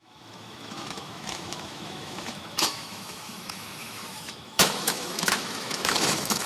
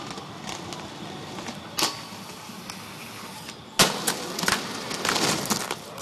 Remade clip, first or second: first